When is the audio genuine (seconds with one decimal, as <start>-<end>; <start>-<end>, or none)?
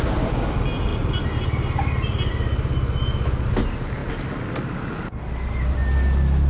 0.0-6.5